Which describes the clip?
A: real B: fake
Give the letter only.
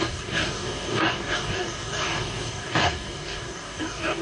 B